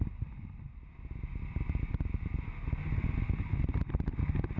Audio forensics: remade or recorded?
recorded